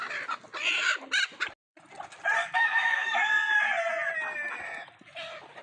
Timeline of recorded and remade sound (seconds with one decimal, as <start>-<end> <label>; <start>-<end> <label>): 0.0-2.4 recorded; 2.4-3.5 remade; 3.5-5.6 recorded

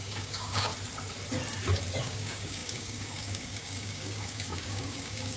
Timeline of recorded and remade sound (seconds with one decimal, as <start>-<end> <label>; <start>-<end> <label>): 0.0-0.7 remade; 0.7-2.0 recorded; 2.0-5.4 remade

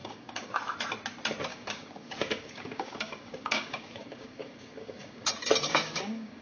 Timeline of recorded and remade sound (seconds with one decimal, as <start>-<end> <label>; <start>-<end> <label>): 0.0-0.5 remade; 0.5-1.5 recorded; 1.5-5.3 remade; 5.3-5.7 recorded; 5.7-6.4 remade

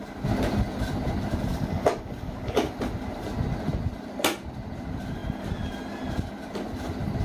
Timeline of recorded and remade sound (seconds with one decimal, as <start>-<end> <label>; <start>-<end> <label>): 0.0-1.5 recorded; 1.5-2.7 remade; 2.7-7.2 recorded

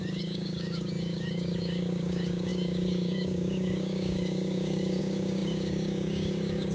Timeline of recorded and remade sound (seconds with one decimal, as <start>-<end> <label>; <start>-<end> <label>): 0.0-6.7 remade

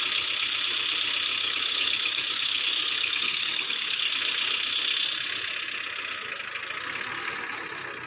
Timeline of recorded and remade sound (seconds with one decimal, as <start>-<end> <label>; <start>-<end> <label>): 0.0-1.3 recorded; 1.3-4.1 remade; 4.1-8.1 recorded

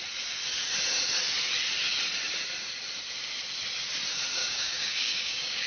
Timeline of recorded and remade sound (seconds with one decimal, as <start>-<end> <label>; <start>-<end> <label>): 0.0-4.4 recorded; 4.4-5.7 remade